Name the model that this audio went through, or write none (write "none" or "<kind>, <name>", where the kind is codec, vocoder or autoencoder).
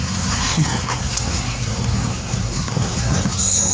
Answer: codec, SNAC